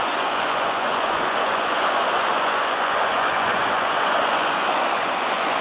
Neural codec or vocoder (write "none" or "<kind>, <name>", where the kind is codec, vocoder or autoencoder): vocoder, Vocos